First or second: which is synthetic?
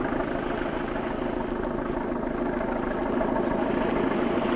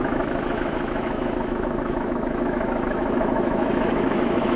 second